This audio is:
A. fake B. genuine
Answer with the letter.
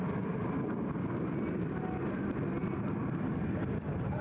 B